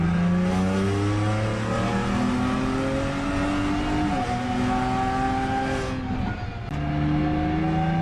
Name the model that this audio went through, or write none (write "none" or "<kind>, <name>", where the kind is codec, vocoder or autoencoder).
none